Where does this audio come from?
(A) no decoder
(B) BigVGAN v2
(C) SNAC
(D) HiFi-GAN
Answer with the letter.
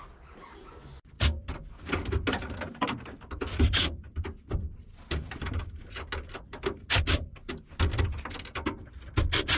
A